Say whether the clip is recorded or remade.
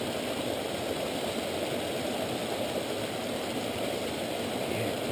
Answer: recorded